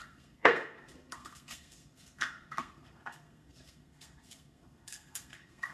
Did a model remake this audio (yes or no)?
yes